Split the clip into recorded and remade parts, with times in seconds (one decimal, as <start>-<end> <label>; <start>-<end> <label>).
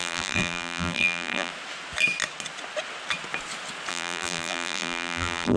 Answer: 0.0-1.5 remade; 1.5-3.9 recorded; 3.9-5.6 remade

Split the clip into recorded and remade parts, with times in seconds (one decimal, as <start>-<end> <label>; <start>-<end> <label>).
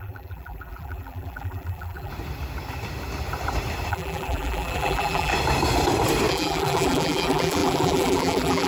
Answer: 0.0-2.1 remade; 2.1-3.9 recorded; 3.9-5.3 remade; 5.3-6.3 recorded; 6.3-8.7 remade